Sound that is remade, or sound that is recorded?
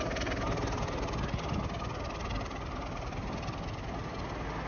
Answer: recorded